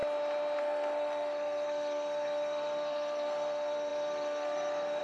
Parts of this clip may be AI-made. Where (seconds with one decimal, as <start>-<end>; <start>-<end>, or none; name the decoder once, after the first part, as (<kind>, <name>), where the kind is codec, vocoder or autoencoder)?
0.6-5.0 (codec, SNAC)